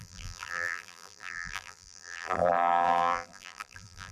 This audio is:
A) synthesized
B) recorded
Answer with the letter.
A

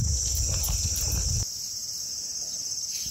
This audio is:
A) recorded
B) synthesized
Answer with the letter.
A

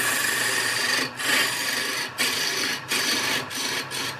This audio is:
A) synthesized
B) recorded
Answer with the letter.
A